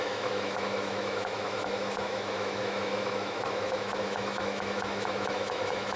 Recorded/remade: remade